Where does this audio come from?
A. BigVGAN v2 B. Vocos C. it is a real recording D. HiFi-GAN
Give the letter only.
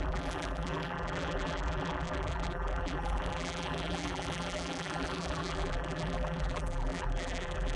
A